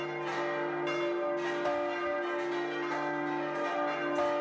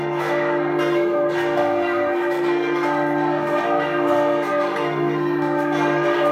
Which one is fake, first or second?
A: second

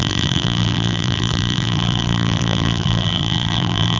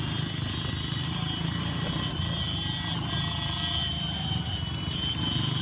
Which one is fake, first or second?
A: first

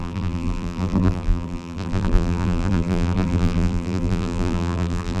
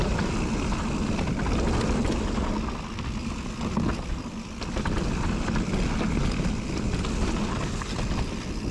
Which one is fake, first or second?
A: first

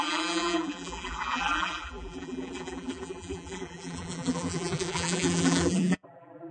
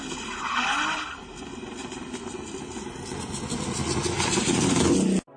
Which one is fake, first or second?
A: first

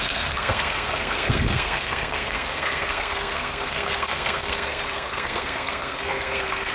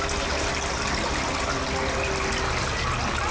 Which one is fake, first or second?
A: first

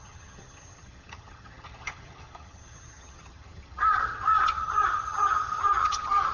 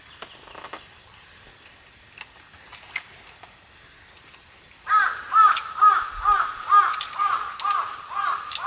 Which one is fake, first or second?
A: first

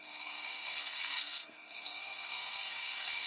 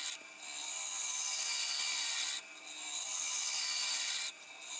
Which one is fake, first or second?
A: first